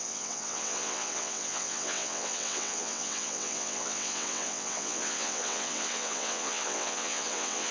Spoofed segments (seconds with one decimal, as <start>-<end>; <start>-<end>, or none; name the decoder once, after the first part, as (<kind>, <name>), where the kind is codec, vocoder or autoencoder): 0.0-7.7 (vocoder, WaveNeXt)